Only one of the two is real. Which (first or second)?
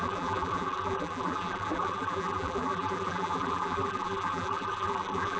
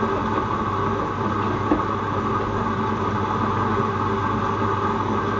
second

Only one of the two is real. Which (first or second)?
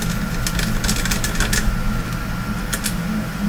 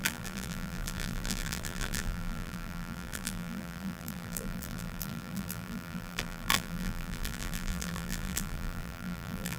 first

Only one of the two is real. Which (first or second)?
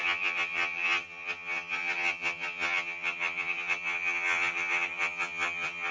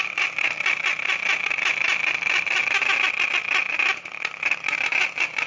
second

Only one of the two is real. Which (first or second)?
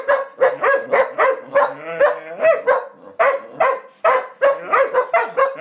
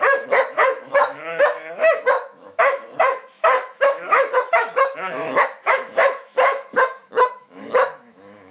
first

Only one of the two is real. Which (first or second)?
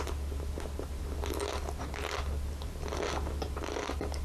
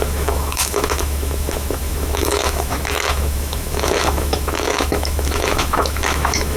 first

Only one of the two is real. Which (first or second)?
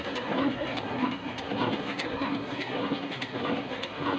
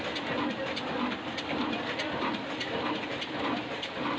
second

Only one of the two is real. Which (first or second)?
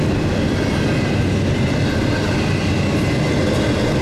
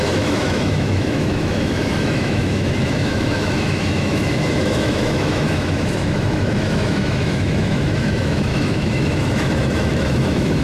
first